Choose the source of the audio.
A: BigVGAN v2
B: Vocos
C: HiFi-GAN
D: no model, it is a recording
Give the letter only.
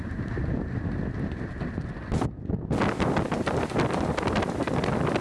D